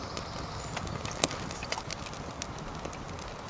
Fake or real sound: real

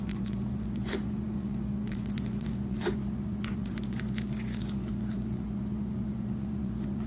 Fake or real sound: fake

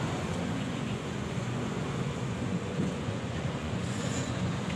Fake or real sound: fake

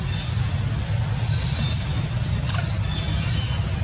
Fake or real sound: real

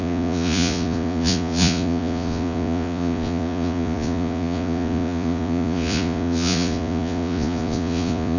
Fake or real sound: fake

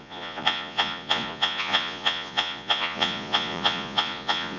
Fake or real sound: fake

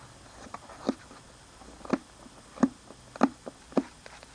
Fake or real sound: real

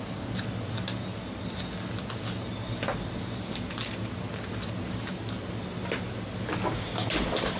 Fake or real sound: real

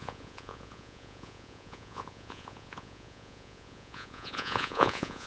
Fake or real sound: fake